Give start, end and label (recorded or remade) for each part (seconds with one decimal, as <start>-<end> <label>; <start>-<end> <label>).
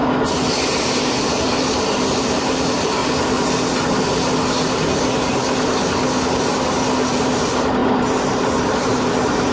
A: 0.0-0.5 recorded; 0.5-3.0 remade; 3.0-7.1 recorded; 7.1-9.5 remade